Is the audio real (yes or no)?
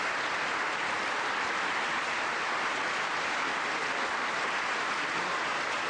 yes